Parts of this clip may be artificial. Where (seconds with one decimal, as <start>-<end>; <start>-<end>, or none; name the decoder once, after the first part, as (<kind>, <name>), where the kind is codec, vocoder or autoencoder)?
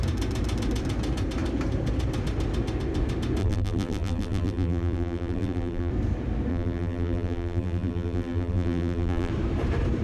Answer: 3.4-5.9 (vocoder, BigVGAN v2); 6.5-9.3